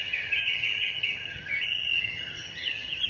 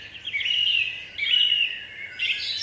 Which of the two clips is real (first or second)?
second